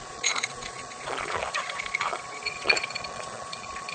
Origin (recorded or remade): remade